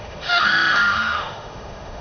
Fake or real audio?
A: fake